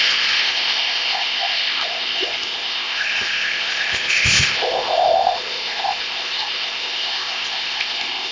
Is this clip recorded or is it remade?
remade